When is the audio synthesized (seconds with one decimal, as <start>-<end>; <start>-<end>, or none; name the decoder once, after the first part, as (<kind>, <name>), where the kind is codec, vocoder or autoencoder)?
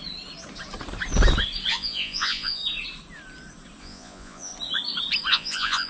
1.7-2.6 (vocoder, Vocos); 3.8-4.5; 5.3-5.9